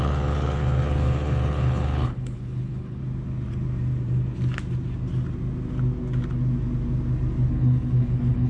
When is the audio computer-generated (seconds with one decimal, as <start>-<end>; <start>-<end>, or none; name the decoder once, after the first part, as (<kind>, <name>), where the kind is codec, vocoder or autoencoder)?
0.0-3.0 (codec, HILCodec); 7.5-8.5